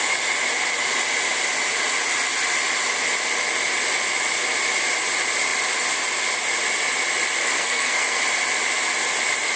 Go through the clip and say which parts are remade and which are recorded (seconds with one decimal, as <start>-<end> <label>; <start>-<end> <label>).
0.0-7.4 recorded; 7.4-8.2 remade; 8.2-9.6 recorded